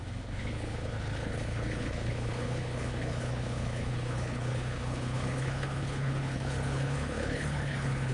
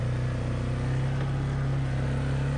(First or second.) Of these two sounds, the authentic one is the second